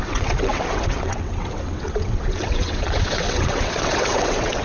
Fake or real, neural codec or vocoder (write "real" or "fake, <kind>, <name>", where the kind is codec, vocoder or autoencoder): fake, vocoder, WaveNeXt